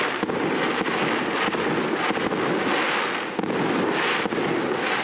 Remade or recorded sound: recorded